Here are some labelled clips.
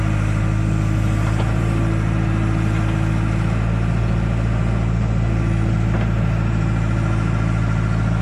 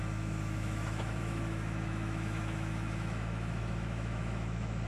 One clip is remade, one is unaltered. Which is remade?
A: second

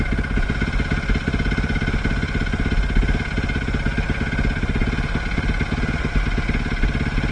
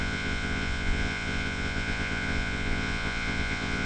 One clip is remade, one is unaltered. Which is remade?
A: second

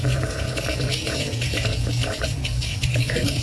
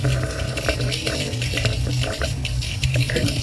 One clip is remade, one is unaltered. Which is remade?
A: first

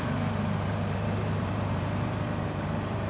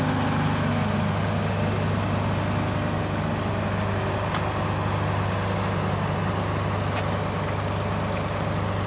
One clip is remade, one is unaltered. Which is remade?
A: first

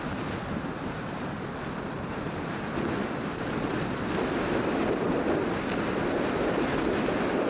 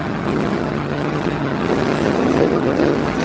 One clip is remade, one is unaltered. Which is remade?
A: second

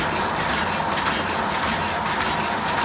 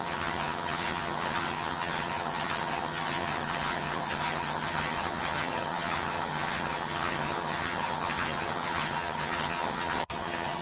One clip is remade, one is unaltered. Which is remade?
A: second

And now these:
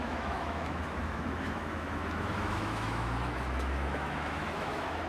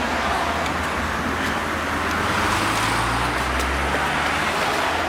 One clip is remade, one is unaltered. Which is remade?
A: first